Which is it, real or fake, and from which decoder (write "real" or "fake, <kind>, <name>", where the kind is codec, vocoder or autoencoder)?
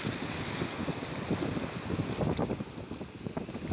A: real